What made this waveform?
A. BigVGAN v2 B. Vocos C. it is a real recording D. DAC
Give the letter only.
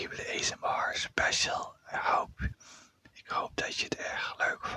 C